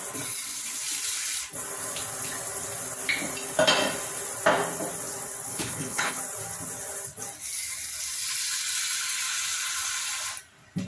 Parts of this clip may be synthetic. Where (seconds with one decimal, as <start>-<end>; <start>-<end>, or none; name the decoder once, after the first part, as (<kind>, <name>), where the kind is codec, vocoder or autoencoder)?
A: 5.5-6.2 (codec, HILCodec)